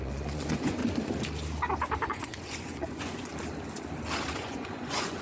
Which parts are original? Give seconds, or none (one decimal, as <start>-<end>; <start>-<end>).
0.8-2.1; 3.3-4.3